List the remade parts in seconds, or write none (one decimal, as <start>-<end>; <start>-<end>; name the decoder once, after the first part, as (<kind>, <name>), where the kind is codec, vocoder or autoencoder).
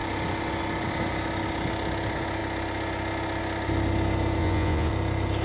4.4-4.9 (vocoder, Vocos)